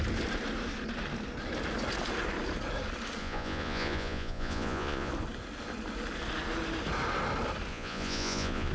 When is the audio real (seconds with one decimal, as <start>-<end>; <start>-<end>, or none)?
0.0-3.2; 5.1-7.7